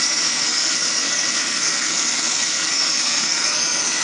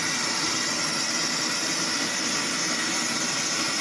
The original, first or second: second